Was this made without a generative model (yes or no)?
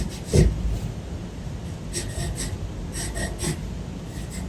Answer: yes